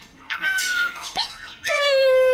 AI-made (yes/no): yes